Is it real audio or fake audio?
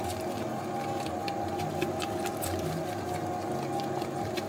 real